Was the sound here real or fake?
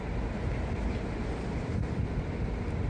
real